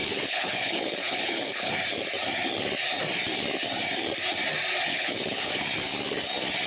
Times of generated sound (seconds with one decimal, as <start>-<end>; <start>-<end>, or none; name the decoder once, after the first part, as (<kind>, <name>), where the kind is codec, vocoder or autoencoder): 0.0-1.7 (codec, HILCodec); 4.9-5.5